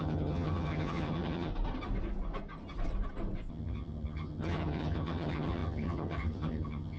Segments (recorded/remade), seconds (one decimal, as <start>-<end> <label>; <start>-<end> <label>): 0.0-1.5 remade; 1.5-3.5 recorded; 3.5-7.0 remade